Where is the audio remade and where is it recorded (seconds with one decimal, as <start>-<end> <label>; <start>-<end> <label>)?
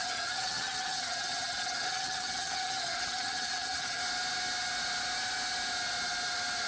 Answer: 0.0-4.0 remade; 4.0-6.7 recorded